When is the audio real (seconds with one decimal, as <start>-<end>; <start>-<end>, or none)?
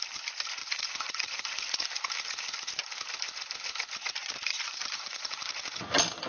0.0-0.6; 1.9-4.2; 5.8-6.3